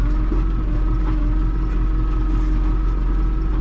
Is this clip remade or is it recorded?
recorded